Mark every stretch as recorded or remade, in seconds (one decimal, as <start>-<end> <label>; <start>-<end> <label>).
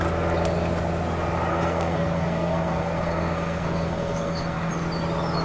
0.0-1.5 recorded; 1.5-4.7 remade; 4.7-5.4 recorded